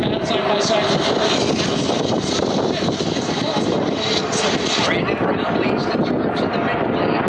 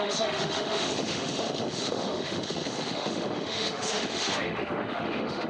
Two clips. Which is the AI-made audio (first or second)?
second